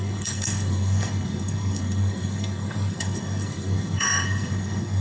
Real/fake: fake